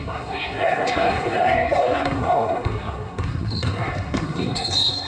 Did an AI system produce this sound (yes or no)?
yes